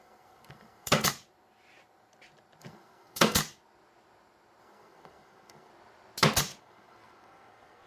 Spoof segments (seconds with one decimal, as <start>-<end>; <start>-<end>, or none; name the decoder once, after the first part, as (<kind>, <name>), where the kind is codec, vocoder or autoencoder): 0.0-1.1 (codec, SNAC); 2.6-3.4; 4.6-5.7; 6.6-7.9